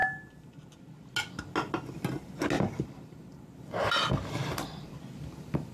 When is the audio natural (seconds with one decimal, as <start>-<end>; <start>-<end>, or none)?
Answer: 0.0-2.7